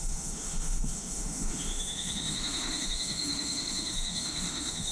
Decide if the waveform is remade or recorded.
remade